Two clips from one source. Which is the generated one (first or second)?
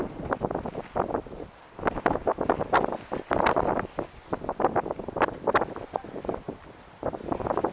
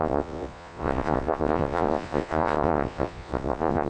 second